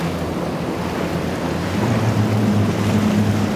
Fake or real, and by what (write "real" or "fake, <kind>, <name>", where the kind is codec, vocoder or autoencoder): real